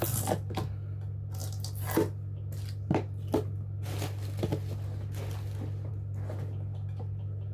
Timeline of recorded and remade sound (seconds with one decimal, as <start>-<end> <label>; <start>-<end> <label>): 0.0-7.5 recorded